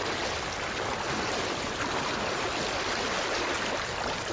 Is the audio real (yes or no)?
yes